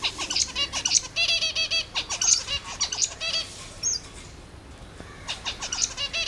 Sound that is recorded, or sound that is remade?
recorded